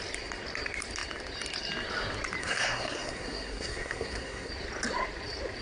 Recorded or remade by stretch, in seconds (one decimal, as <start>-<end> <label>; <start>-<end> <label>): 0.0-2.4 recorded; 2.4-4.5 remade; 4.5-5.6 recorded